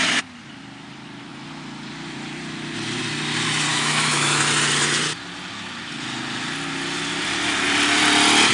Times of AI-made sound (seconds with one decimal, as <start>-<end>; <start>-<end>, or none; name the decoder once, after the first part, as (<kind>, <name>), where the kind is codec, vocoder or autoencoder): 3.7-4.4 (autoencoder, DAC-VAE)